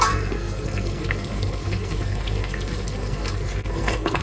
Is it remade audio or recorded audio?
remade